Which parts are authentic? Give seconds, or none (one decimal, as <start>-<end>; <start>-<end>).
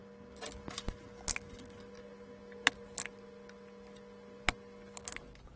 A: 0.0-5.6